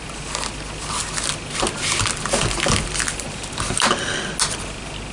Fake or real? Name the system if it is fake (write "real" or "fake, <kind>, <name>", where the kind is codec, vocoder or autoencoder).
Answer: real